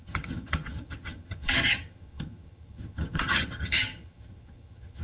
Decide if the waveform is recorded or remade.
remade